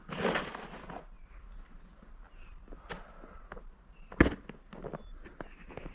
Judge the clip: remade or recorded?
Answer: recorded